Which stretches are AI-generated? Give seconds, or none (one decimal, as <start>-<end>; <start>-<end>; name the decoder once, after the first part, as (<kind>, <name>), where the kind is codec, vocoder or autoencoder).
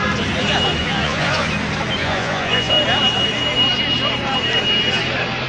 0.8-1.5 (vocoder, Vocos); 2.0-2.7